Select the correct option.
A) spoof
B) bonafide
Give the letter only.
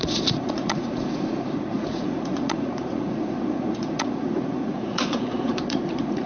A